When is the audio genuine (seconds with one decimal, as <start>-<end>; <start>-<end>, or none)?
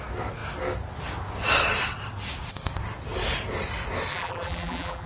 0.0-4.1